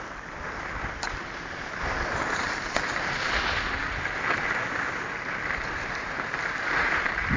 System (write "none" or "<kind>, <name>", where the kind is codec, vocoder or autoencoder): none